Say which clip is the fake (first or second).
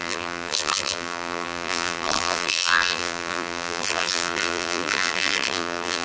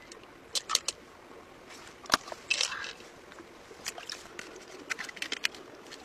first